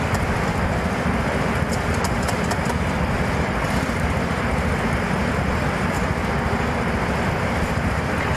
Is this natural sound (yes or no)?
no